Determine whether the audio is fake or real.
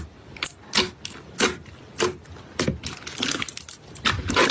real